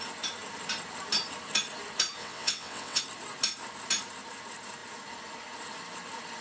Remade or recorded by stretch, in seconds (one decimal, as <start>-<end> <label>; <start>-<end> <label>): 0.0-2.2 recorded; 2.2-3.0 remade; 3.0-6.4 recorded